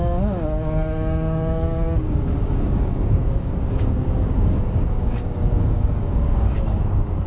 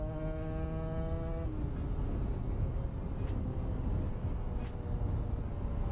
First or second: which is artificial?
first